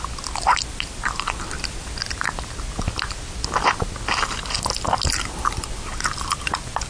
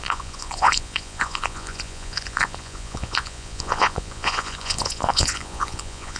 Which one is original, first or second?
first